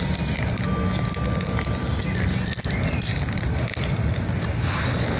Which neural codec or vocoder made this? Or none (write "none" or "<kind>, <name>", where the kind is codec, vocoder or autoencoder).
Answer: none